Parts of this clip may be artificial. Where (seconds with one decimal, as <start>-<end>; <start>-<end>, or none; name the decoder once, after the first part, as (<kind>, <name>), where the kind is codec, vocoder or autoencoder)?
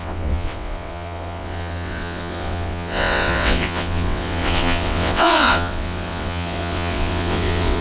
0.0-7.8 (vocoder, WaveNeXt)